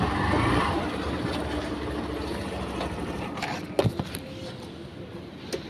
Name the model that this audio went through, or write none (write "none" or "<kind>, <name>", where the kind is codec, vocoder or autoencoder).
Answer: none